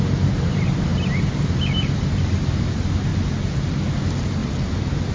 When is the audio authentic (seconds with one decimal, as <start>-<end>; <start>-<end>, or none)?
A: 3.1-4.0; 4.4-5.1